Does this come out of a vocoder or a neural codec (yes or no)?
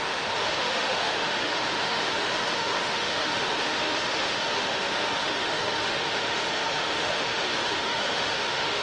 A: yes